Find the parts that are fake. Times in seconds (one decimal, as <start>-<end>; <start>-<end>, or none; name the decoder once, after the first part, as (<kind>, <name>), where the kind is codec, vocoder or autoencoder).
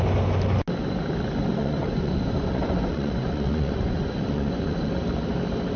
1.5-4.9 (vocoder, Vocos)